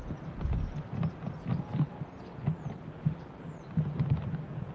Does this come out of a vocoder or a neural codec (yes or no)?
no